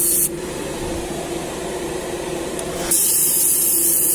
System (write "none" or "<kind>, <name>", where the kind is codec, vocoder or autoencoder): none